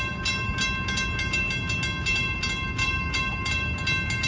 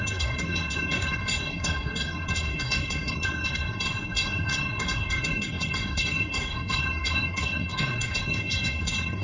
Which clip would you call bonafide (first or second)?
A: first